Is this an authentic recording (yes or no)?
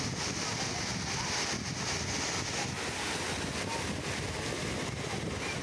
yes